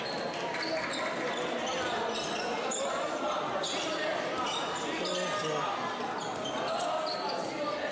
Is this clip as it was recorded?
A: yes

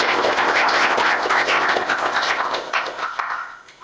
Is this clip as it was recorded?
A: no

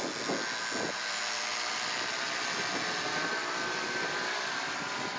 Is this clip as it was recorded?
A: yes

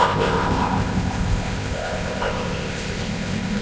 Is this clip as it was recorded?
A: no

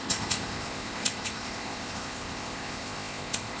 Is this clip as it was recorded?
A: no